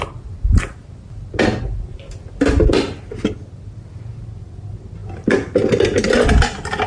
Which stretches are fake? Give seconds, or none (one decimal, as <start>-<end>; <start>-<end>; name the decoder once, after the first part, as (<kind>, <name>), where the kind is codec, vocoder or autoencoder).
none